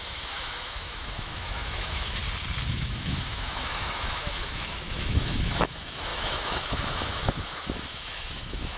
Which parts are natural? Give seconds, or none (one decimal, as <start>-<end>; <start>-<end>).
2.2-2.7